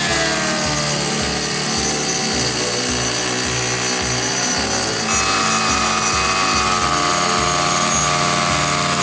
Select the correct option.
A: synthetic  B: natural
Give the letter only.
B